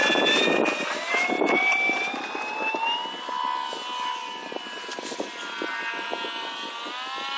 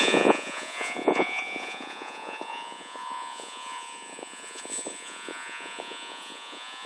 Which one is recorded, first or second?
first